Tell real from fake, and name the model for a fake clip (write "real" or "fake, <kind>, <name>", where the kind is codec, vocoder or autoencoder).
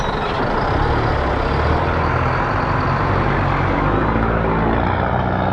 real